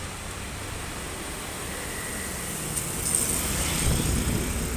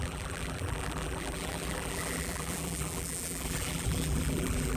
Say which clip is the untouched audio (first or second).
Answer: first